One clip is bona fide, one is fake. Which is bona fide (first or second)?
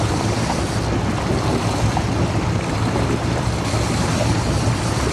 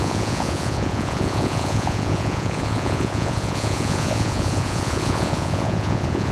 first